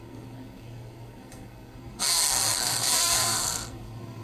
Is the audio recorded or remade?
remade